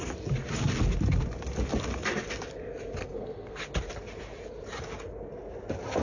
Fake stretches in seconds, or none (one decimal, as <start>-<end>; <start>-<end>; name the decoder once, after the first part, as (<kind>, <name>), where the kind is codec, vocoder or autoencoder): 3.0-3.6 (codec, SNAC)